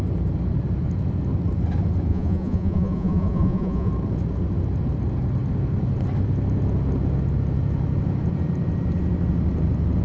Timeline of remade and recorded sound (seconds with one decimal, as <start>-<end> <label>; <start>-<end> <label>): 0.0-2.1 recorded; 2.1-3.9 remade; 3.9-10.0 recorded